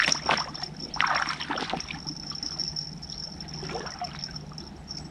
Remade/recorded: recorded